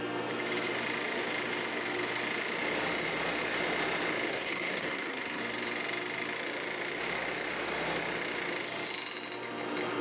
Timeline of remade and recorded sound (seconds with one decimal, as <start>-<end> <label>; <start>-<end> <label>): 0.0-4.3 recorded; 4.3-5.4 remade; 5.4-10.0 recorded